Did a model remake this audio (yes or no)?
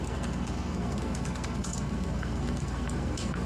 yes